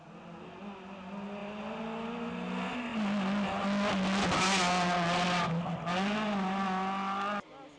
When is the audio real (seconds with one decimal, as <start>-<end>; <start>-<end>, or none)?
0.0-1.4; 2.3-7.8